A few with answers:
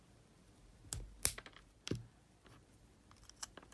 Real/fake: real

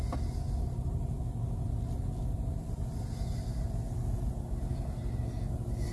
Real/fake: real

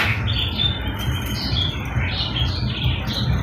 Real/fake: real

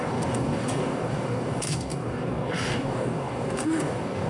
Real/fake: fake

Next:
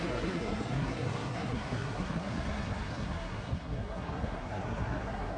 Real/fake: fake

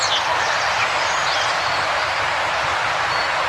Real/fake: real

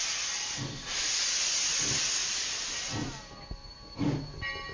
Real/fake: real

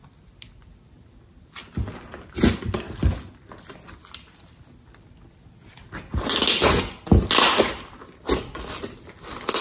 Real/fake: real